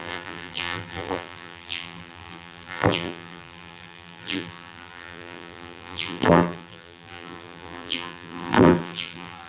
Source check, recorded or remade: remade